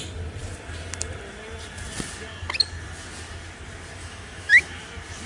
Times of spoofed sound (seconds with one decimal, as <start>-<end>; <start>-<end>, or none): 4.0-4.6